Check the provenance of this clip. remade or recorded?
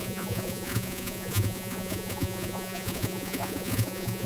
remade